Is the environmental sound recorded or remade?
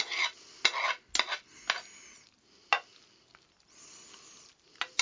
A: recorded